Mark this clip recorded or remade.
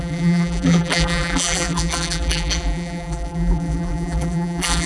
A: remade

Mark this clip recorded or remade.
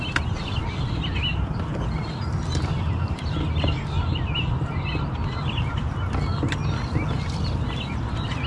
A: recorded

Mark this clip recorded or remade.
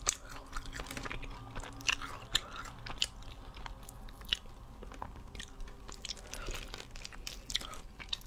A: recorded